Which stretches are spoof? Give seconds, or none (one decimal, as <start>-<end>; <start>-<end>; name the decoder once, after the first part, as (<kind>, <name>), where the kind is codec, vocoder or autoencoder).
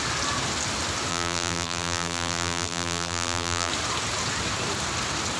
1.1-3.7 (vocoder, BigVGAN v2)